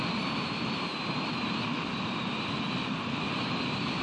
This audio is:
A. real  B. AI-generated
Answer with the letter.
A